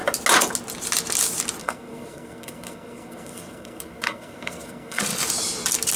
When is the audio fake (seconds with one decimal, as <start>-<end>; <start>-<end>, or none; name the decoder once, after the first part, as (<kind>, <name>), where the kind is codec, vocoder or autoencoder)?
1.6-5.0 (codec, SNAC)